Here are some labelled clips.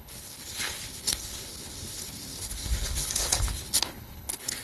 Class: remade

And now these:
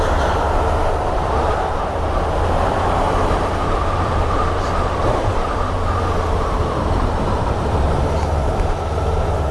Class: remade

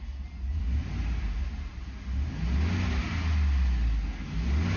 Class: recorded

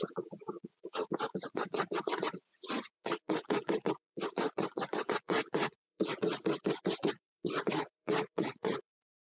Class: remade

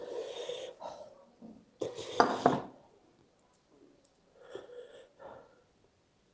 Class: recorded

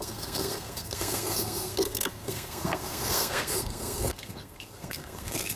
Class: remade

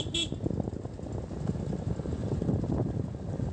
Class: recorded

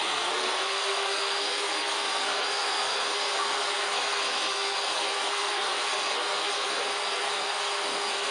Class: remade